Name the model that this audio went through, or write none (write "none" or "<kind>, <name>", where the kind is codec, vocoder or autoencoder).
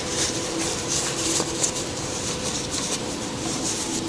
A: vocoder, BigVGAN v2